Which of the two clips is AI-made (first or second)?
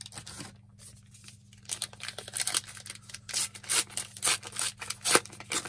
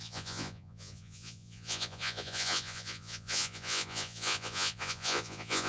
second